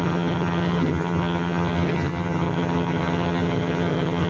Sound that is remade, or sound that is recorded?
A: remade